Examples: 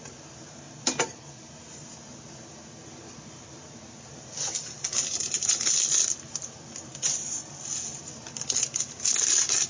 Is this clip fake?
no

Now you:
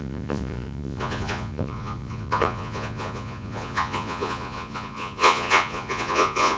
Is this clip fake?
yes